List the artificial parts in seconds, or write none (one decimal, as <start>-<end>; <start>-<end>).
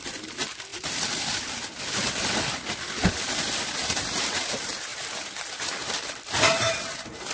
none